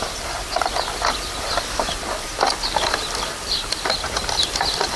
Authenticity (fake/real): fake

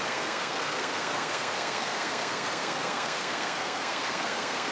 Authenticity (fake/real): fake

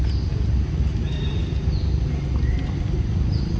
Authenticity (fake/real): real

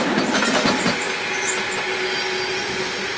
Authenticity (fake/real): real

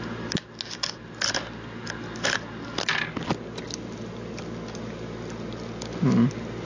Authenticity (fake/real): real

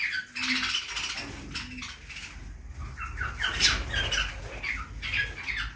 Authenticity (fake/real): real